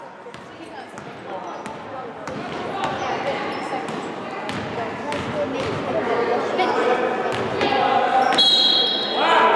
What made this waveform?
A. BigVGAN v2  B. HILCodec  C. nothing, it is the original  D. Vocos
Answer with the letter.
C